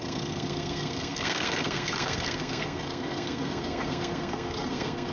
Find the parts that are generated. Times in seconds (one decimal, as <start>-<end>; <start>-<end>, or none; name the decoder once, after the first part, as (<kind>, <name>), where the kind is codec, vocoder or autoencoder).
0.0-5.1 (codec, SNAC)